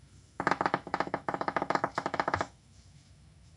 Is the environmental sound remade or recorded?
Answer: remade